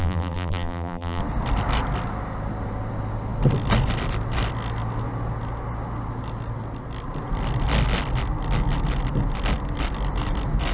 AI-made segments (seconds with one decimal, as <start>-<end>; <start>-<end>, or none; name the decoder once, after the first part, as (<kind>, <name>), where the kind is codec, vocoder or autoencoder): 0.0-1.2 (vocoder, BigVGAN v2)